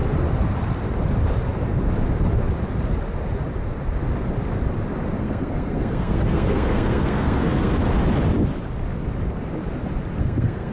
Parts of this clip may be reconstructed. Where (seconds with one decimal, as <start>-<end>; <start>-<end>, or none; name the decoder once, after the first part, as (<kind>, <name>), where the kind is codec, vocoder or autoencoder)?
5.2-7.8 (codec, SNAC); 10.2-10.7